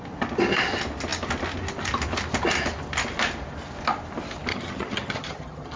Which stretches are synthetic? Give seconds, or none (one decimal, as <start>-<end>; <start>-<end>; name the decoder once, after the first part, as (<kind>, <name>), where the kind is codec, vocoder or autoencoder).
4.5-5.8 (vocoder, HiFi-GAN)